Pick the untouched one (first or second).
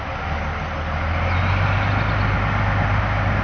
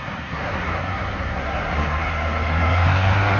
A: first